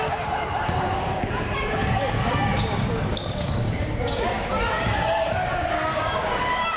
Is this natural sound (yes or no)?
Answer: no